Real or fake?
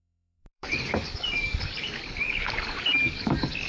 fake